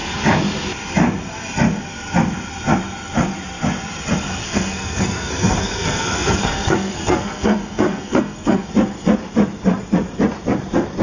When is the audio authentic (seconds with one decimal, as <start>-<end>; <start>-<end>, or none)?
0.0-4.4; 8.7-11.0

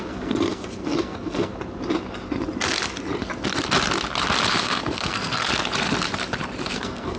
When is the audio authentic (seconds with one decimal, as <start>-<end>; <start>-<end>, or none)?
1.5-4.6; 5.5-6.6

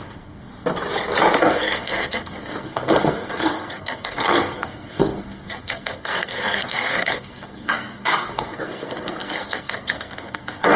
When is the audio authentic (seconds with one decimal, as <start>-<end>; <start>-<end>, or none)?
0.5-1.4

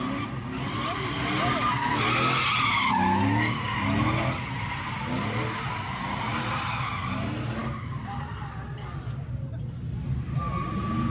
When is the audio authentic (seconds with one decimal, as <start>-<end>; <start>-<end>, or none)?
0.0-11.1